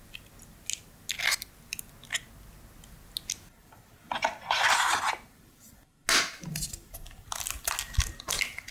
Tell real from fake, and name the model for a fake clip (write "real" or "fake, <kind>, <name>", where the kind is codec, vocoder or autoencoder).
real